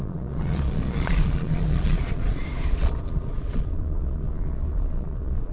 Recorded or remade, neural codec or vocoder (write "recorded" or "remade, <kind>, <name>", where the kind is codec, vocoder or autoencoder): remade, vocoder, Vocos